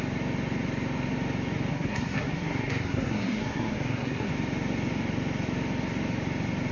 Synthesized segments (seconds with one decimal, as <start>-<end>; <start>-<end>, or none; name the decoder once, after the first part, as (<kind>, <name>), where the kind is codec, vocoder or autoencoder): 1.7-4.3 (codec, SNAC)